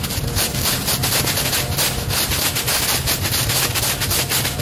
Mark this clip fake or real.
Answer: fake